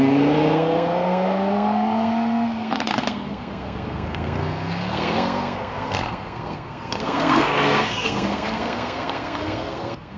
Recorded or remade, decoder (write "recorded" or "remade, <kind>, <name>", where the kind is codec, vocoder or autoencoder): remade, codec, SNAC